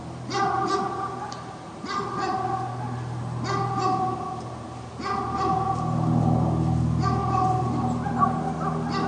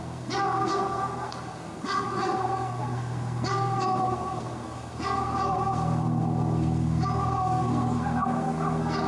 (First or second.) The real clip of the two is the first